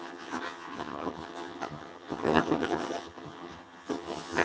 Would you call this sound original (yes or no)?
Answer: no